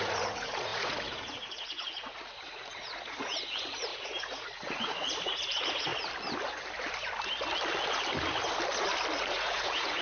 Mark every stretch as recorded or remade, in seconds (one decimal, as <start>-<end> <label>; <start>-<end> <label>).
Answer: 0.0-5.9 remade; 5.9-9.2 recorded; 9.2-10.0 remade